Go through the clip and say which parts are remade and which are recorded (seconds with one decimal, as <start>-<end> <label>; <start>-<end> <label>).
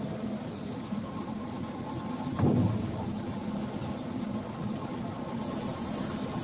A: 0.0-6.4 remade